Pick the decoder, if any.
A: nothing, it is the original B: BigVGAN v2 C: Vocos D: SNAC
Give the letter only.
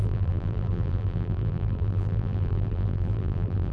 B